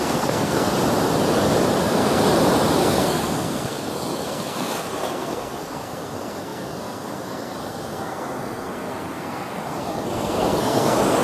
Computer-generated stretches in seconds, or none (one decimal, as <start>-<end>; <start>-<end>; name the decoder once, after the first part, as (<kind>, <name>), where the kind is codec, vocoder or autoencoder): 0.0-0.7 (codec, SNAC); 1.8-2.2; 2.7-11.2